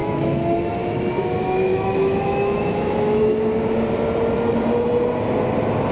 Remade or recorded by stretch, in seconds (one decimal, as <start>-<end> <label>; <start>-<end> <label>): 0.0-0.7 remade; 0.7-1.7 recorded; 1.7-3.2 remade; 3.2-5.9 recorded